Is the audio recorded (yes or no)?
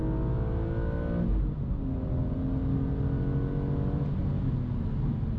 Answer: yes